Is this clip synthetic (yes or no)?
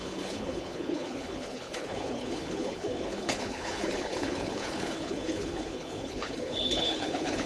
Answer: yes